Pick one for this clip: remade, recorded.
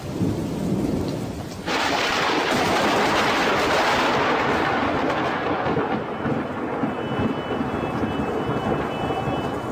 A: recorded